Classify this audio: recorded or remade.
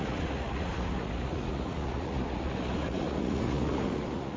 remade